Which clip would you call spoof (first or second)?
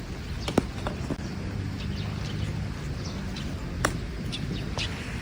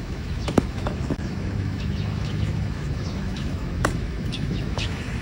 second